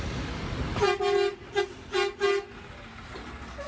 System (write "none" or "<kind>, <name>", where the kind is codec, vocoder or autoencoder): none